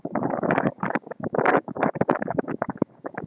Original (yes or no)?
no